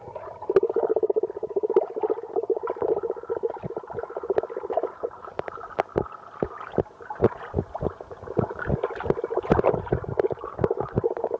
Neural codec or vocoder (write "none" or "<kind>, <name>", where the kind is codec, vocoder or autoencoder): none